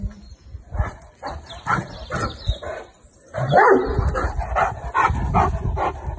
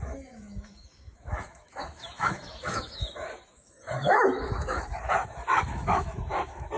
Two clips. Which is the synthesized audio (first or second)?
second